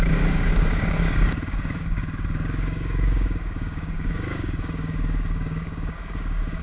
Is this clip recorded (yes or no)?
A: no